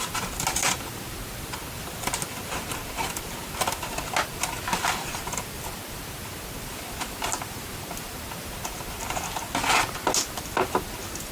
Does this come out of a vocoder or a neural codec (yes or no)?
no